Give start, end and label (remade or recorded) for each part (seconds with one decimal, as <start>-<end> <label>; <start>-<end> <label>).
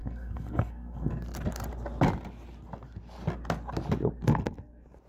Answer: 0.0-1.1 remade; 1.1-5.1 recorded